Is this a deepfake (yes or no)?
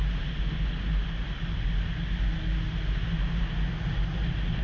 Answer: no